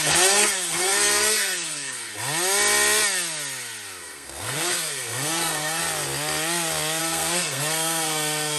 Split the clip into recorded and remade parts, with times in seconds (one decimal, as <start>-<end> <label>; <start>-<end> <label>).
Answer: 0.0-2.1 remade; 2.1-4.0 recorded; 4.0-5.8 remade; 5.8-7.0 recorded; 7.0-8.6 remade